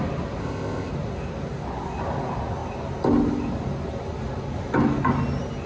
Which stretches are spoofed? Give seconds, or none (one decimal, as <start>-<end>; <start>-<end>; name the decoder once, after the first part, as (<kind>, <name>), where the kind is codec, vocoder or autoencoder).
0.4-0.9 (codec, ZipCodec)